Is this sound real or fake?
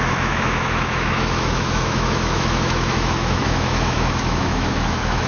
fake